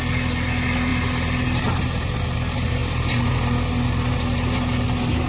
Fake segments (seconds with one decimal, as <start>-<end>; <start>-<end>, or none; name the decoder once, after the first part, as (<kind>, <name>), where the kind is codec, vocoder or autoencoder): none